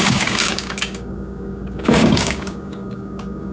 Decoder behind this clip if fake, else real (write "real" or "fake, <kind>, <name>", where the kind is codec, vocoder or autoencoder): fake, codec, DAC